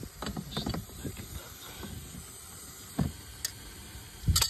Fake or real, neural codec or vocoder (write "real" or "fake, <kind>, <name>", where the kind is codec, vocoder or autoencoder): real